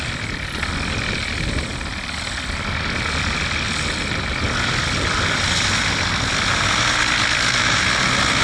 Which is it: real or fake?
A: real